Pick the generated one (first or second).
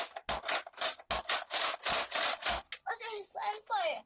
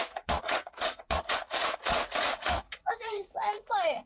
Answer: second